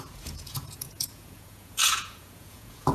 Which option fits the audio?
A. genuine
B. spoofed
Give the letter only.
B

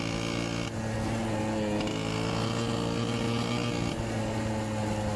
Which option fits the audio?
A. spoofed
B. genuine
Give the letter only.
B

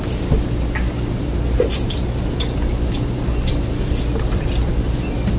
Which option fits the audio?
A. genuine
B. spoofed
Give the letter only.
A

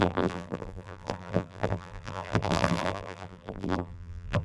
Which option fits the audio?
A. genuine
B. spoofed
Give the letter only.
B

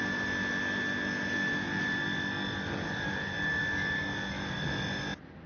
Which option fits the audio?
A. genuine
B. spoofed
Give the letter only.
A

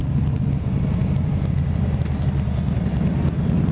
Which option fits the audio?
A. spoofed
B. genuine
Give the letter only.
B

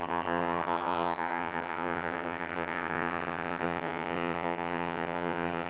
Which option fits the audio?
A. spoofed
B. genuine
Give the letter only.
A